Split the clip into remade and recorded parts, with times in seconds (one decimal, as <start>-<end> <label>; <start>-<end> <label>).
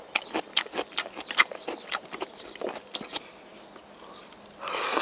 0.0-5.0 recorded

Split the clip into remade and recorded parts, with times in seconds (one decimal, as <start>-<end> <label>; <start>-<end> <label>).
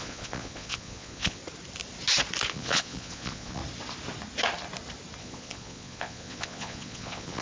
0.0-1.4 remade; 1.4-2.5 recorded; 2.5-3.6 remade; 3.6-5.2 recorded; 5.2-7.4 remade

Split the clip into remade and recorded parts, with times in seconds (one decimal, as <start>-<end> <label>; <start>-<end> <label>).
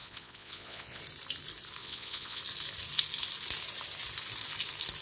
0.0-1.0 remade; 1.0-1.8 recorded; 1.8-2.4 remade; 2.4-5.0 recorded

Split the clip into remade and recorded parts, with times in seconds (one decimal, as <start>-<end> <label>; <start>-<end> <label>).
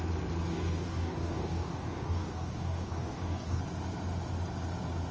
0.0-0.5 recorded; 0.5-3.6 remade; 3.6-5.1 recorded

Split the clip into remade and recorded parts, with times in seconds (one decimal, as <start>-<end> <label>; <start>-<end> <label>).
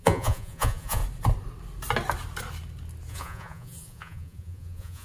0.0-1.0 remade; 1.0-3.1 recorded; 3.1-5.0 remade